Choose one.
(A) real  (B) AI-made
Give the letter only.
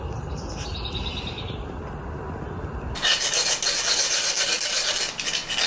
A